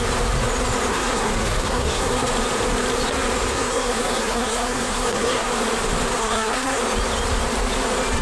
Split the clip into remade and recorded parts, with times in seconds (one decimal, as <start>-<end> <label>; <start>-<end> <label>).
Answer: 0.0-0.9 recorded; 0.9-2.3 remade; 2.3-3.5 recorded; 3.5-5.5 remade; 5.5-6.2 recorded; 6.2-6.8 remade; 6.8-8.2 recorded